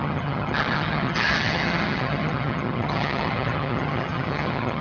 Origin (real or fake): fake